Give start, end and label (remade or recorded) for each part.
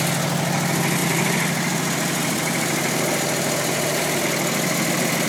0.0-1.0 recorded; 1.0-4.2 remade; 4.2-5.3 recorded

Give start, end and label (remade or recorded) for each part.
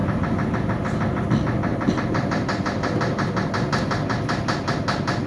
0.0-1.7 recorded; 1.7-3.5 remade; 3.5-5.3 recorded